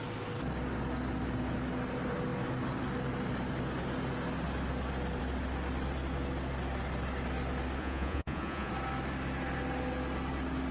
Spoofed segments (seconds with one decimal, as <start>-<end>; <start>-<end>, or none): 7.8-8.7